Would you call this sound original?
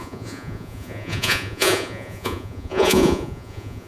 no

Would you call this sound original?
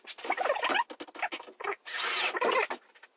yes